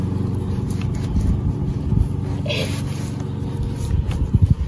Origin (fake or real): real